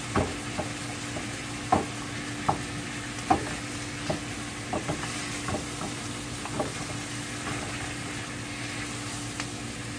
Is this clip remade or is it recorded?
recorded